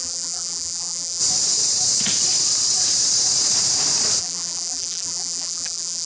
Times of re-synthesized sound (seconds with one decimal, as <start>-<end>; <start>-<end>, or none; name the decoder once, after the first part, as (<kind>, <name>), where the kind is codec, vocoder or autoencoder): 0.0-1.2 (vocoder, BigVGAN v2); 4.2-6.1